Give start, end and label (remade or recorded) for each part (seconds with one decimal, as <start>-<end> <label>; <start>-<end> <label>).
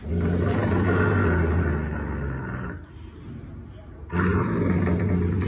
0.0-5.5 recorded